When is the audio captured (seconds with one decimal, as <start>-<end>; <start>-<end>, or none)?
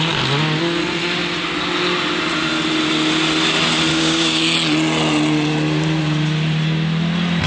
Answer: 0.0-3.9; 4.4-7.5